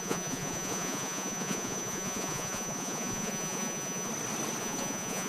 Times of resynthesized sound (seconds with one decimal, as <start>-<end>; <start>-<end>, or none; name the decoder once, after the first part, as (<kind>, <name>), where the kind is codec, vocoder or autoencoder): 0.0-4.1 (vocoder, Vocos); 4.6-5.3